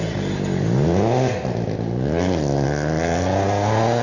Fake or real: real